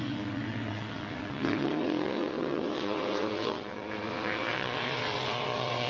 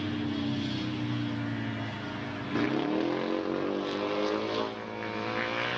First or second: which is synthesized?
first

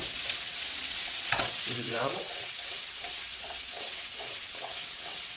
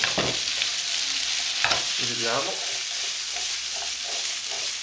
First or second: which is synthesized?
first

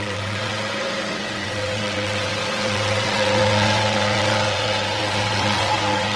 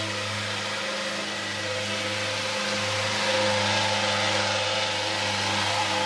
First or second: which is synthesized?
first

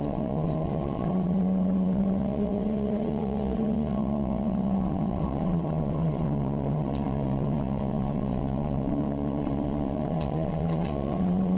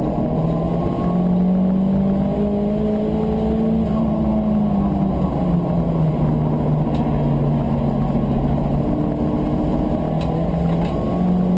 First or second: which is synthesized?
first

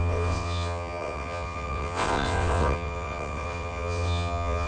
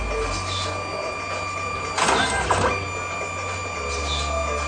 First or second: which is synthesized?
first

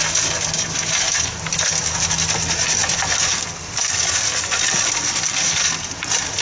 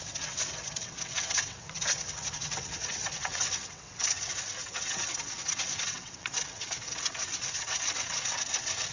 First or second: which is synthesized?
second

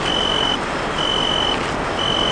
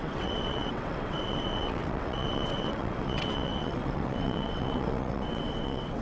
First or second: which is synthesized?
second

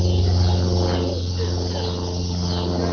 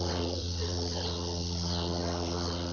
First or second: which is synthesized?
second